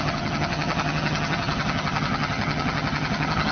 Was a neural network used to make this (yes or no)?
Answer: yes